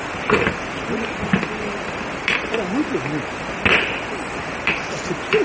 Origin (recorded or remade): recorded